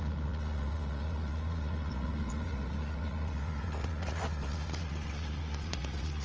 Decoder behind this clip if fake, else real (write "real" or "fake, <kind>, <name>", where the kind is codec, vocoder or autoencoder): fake, vocoder, Vocos